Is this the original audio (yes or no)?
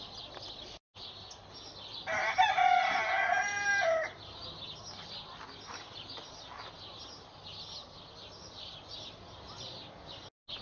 yes